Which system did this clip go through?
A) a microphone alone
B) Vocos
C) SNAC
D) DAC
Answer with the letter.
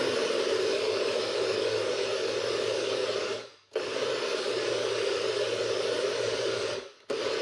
D